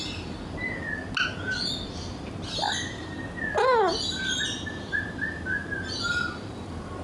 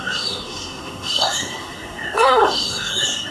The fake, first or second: second